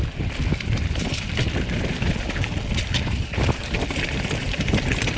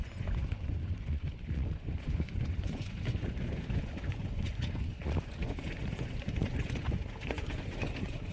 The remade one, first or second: second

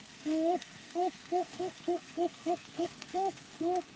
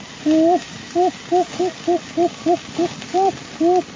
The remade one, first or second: first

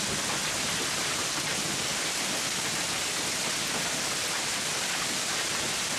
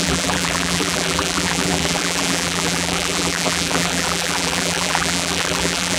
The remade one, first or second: second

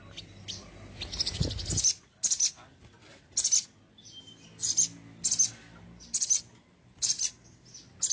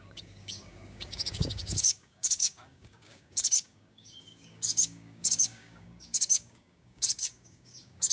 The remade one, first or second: second